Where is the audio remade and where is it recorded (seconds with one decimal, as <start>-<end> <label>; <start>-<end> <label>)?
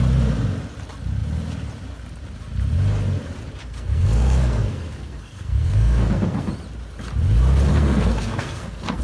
0.0-3.6 recorded; 3.6-6.5 remade; 6.5-7.7 recorded; 7.7-9.0 remade